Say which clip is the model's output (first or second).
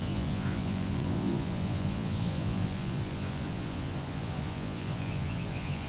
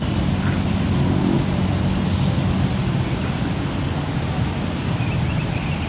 first